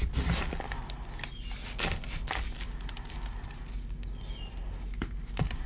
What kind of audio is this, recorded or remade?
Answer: recorded